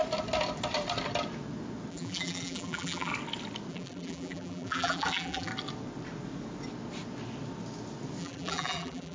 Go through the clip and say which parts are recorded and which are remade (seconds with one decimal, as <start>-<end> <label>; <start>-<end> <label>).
0.0-1.9 recorded; 1.9-3.1 remade; 3.1-3.7 recorded; 3.7-5.5 remade; 5.5-8.2 recorded; 8.2-9.1 remade